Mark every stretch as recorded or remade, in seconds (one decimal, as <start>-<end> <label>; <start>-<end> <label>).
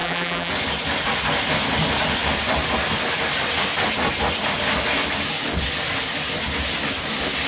0.0-0.5 remade; 0.5-7.5 recorded